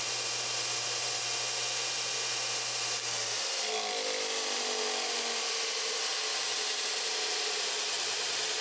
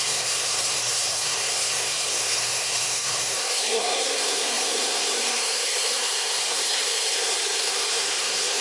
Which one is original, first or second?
first